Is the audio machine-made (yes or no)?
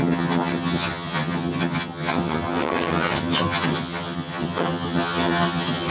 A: yes